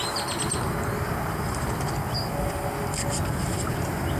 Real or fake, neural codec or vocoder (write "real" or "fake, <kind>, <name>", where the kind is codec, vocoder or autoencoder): real